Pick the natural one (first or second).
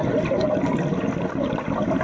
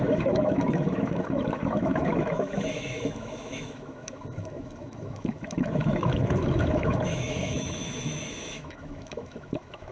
first